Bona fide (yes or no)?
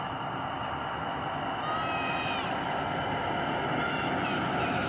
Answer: yes